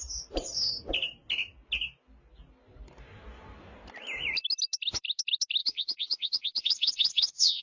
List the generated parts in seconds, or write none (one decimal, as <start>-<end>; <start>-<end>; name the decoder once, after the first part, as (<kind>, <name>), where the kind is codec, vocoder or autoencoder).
5.6-7.6 (vocoder, WaveNeXt)